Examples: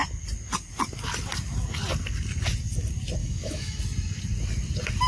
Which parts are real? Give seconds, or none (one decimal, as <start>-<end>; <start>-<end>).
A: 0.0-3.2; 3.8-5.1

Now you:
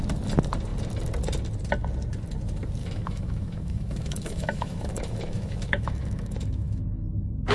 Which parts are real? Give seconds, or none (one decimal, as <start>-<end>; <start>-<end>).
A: 0.0-2.8; 6.8-7.5

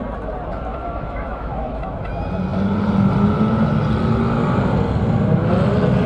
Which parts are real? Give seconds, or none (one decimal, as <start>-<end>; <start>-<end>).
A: 0.0-0.7; 2.1-6.1